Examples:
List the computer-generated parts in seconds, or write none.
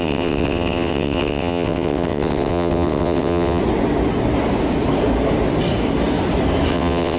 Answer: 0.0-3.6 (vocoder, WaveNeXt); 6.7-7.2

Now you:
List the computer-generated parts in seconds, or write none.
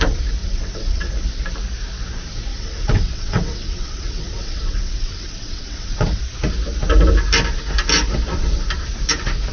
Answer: 0.4-1.1 (vocoder, WaveNeXt); 2.5-6.2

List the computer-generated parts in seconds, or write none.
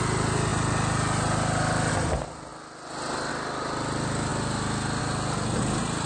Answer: none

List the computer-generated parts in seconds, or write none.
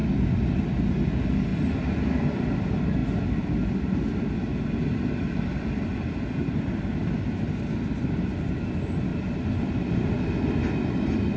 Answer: none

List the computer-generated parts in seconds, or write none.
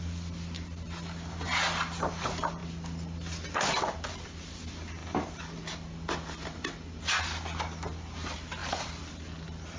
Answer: none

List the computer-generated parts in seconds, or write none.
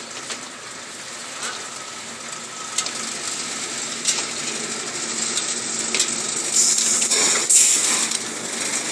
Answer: 6.9-7.5 (vocoder, WaveNeXt)